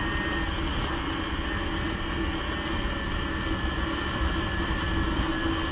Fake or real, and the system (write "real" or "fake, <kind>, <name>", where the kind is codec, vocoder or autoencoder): real